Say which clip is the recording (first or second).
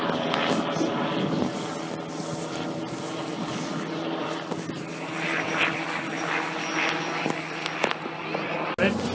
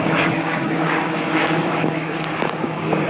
first